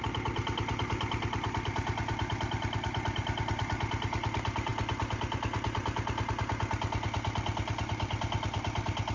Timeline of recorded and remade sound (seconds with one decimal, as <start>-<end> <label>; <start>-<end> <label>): 0.0-9.1 recorded